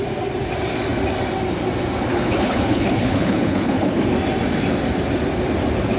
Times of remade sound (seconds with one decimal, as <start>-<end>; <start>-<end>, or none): 2.1-4.0